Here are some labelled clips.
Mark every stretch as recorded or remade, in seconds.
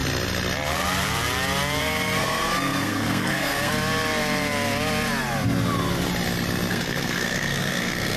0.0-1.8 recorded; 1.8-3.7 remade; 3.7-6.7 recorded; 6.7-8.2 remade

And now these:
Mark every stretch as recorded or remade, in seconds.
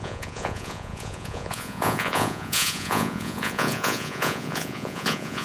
0.0-5.4 remade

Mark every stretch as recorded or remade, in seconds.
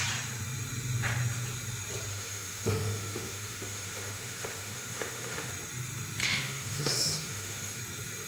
0.0-2.1 recorded; 2.1-5.5 remade; 5.5-6.2 recorded; 6.2-7.8 remade; 7.8-8.3 recorded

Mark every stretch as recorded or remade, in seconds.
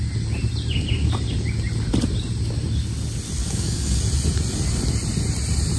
0.0-3.4 recorded; 3.4-4.0 remade; 4.0-5.8 recorded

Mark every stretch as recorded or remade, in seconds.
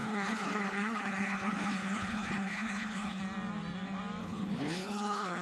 0.0-3.2 remade; 3.2-4.2 recorded; 4.2-5.4 remade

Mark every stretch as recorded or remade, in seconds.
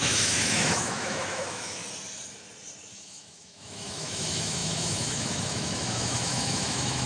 0.0-1.8 remade; 1.8-2.9 recorded; 2.9-7.1 remade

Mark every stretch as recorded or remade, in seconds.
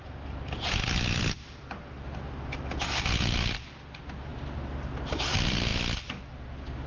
0.0-6.9 recorded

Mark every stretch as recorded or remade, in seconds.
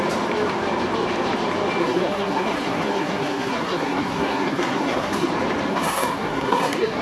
0.0-1.8 recorded; 1.8-5.3 remade; 5.3-5.7 recorded; 5.7-7.0 remade